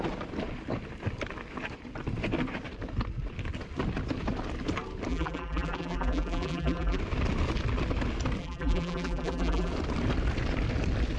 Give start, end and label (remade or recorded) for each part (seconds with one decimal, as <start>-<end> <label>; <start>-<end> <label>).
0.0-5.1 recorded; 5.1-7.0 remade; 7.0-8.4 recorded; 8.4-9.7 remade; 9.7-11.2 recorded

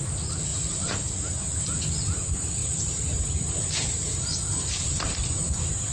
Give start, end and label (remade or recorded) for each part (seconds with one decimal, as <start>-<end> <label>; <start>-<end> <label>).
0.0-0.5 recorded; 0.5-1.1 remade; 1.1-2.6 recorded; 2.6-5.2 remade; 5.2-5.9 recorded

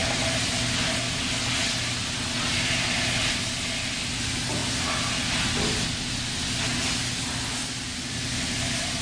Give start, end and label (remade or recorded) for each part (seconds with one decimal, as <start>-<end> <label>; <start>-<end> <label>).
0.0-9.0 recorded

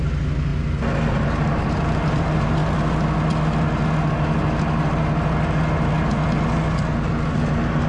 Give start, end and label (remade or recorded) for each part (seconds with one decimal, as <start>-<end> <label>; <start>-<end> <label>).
0.0-0.5 remade; 0.5-1.1 recorded; 1.1-2.6 remade; 2.6-7.3 recorded; 7.3-7.9 remade

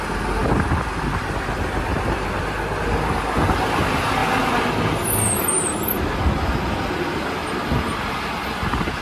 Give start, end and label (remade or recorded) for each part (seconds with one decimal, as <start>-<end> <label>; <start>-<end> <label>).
0.0-9.0 recorded

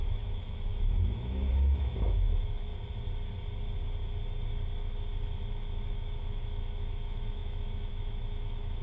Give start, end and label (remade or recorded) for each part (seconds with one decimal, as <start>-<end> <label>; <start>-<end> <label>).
0.0-2.7 remade; 2.7-5.9 recorded; 5.9-8.8 remade

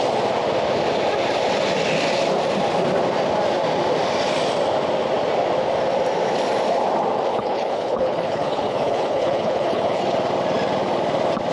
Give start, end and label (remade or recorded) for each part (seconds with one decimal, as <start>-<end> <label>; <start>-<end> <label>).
0.0-7.3 recorded; 7.3-10.0 remade; 10.0-11.5 recorded